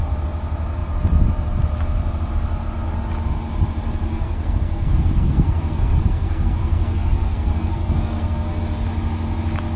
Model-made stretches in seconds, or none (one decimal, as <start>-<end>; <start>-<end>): 4.1-8.6